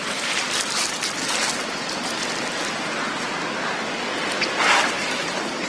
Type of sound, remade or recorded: recorded